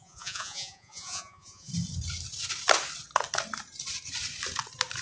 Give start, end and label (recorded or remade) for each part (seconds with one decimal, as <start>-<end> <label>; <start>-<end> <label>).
0.0-1.7 remade; 1.7-5.0 recorded